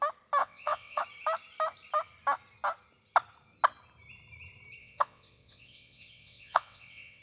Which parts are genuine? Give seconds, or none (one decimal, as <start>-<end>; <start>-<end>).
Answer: 0.0-0.4; 1.0-4.8